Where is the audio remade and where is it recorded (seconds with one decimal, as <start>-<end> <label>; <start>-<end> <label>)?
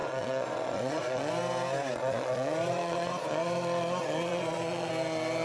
0.0-1.3 remade; 1.3-2.0 recorded; 2.0-4.9 remade; 4.9-5.4 recorded